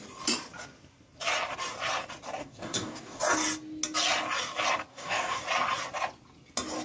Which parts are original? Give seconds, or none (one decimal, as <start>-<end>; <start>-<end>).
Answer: 0.0-2.4; 3.2-4.9; 5.4-6.8